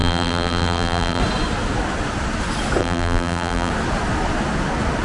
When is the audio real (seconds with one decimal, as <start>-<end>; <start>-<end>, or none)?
1.2-2.8; 3.7-5.0